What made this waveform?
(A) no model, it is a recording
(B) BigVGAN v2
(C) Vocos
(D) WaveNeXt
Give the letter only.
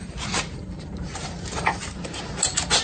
B